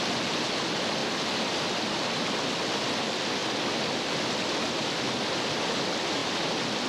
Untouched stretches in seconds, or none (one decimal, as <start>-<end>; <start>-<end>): 0.0-6.9